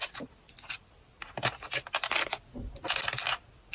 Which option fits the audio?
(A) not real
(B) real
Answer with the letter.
B